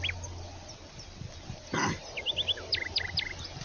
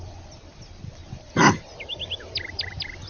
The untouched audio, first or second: first